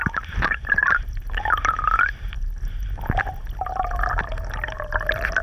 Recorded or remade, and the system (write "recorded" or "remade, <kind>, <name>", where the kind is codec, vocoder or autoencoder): recorded